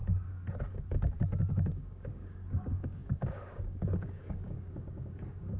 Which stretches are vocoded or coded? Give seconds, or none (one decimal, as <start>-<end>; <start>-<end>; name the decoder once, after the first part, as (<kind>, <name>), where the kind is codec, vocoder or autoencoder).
1.5-5.6 (codec, DAC)